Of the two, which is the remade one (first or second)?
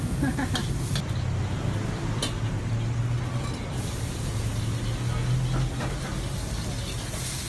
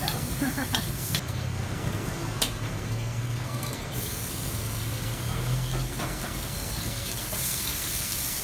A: second